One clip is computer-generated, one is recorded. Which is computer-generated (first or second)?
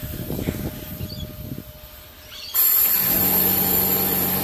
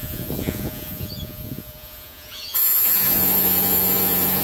second